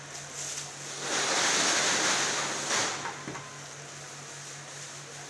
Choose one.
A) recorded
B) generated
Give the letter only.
A